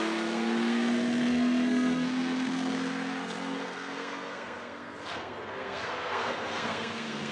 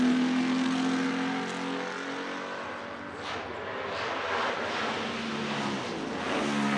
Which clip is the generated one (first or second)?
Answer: first